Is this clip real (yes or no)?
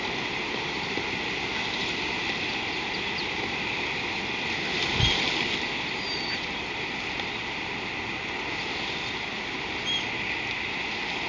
yes